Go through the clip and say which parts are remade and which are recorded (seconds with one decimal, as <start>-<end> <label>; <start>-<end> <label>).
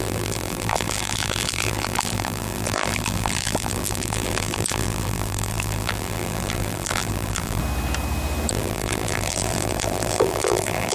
0.0-7.6 remade; 7.6-8.5 recorded; 8.5-10.9 remade